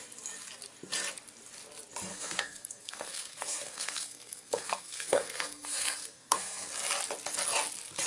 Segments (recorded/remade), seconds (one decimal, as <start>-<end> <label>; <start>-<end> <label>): 0.0-2.1 recorded; 2.1-6.7 remade; 6.7-8.1 recorded